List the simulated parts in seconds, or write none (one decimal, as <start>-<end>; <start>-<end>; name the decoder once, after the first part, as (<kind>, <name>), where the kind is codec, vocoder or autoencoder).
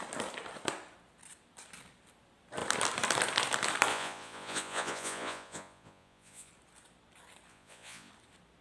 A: 3.9-6.5 (vocoder, Vocos); 7.5-8.1